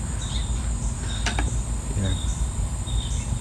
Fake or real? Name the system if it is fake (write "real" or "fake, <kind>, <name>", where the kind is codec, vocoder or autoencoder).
real